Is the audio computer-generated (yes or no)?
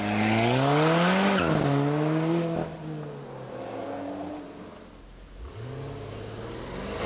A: no